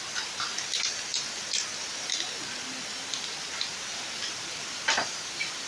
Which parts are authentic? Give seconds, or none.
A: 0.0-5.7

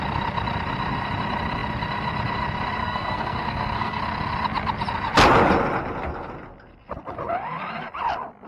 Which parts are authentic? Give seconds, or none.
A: 0.0-2.8; 4.0-8.5

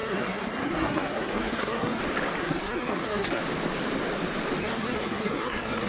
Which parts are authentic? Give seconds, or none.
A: 2.0-2.4; 3.4-4.6

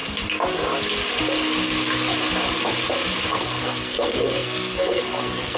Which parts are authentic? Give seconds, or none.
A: 0.0-3.3

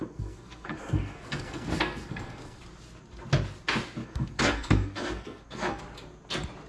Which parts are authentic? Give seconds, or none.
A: 2.6-4.0; 5.8-6.7

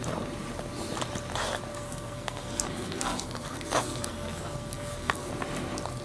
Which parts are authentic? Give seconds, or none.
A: 0.0-1.7; 5.3-6.0